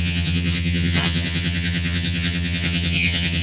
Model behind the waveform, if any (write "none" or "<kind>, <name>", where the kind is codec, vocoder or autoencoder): vocoder, HiFi-GAN